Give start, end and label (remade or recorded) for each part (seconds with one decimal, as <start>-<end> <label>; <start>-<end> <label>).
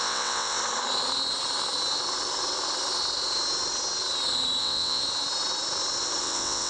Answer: 0.0-0.6 remade; 0.6-4.6 recorded; 4.6-5.0 remade; 5.0-6.2 recorded; 6.2-6.7 remade